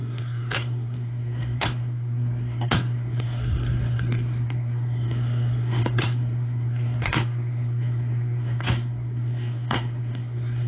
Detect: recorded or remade remade